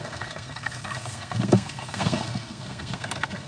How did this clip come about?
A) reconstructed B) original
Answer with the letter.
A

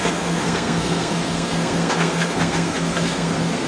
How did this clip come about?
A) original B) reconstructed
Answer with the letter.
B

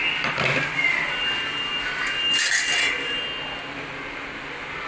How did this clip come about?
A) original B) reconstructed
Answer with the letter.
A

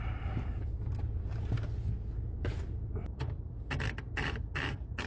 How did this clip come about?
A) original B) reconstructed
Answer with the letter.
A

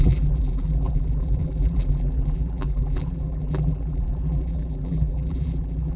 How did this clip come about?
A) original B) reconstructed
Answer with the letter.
B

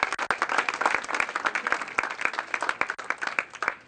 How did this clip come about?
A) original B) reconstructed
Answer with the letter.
A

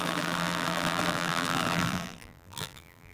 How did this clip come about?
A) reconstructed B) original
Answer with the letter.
A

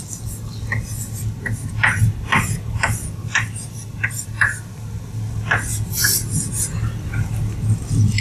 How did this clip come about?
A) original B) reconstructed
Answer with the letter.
A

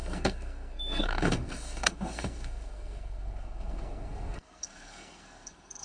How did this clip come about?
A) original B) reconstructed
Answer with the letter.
B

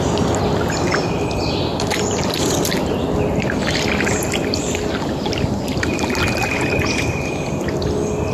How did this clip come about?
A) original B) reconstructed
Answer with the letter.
A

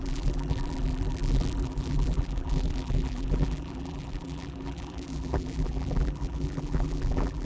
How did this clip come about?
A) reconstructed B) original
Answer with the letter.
A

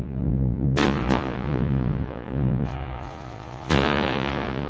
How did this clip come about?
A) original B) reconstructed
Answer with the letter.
B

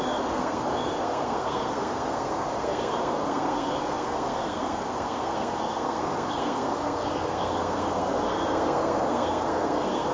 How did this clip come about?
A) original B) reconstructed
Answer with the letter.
B